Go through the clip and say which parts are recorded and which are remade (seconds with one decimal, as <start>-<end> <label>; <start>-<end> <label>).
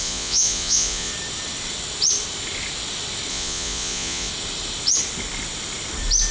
0.0-1.1 remade; 1.1-3.3 recorded; 3.3-4.3 remade; 4.3-6.3 recorded